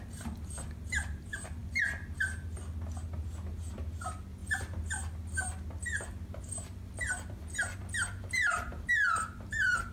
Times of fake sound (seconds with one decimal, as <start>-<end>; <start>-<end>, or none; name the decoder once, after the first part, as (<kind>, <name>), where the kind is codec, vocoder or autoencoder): none